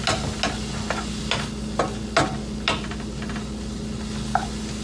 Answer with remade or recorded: recorded